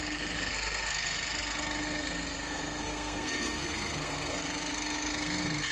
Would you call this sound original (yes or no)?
no